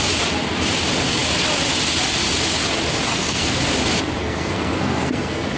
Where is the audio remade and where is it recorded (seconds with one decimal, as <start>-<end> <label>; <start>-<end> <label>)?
0.0-3.1 recorded; 3.1-3.6 remade; 3.6-4.2 recorded; 4.2-5.6 remade